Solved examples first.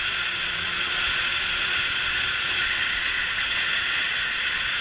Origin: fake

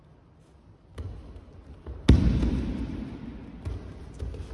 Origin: real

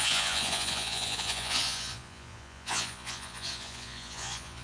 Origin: fake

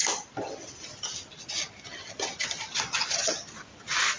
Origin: real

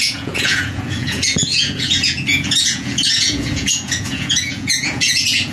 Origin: fake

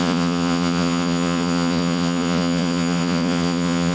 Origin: fake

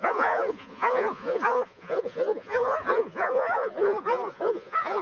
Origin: fake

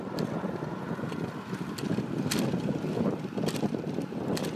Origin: real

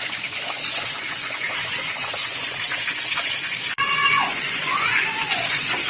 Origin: fake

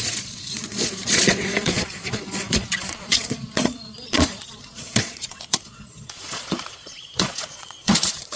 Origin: fake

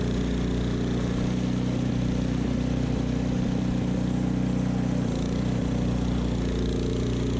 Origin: real